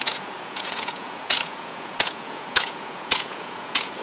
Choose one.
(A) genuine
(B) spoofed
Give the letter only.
B